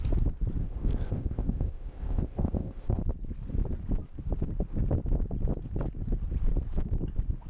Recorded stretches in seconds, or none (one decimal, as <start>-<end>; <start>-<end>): 0.0-0.6; 3.0-7.5